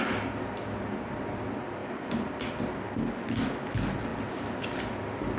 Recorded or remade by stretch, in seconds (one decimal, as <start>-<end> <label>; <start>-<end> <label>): 0.0-1.8 recorded; 1.8-2.3 remade; 2.3-5.4 recorded